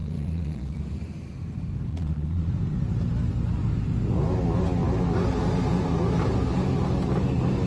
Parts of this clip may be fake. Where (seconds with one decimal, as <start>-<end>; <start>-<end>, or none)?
0.0-0.8; 1.9-2.5